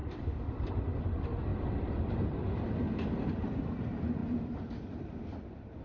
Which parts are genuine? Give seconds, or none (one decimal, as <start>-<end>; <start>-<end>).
0.7-1.5; 2.1-4.2